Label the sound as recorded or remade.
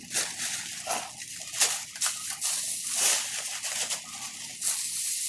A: recorded